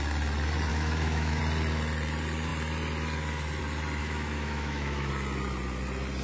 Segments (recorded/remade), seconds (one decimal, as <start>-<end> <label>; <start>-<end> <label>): 0.0-0.7 recorded; 0.7-1.4 remade; 1.4-4.0 recorded; 4.0-5.1 remade; 5.1-6.2 recorded